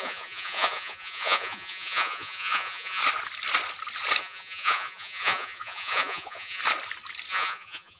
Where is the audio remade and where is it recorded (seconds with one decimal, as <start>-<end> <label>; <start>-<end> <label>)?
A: 0.0-3.0 remade; 3.0-4.2 recorded; 4.2-6.6 remade; 6.6-7.3 recorded; 7.3-8.0 remade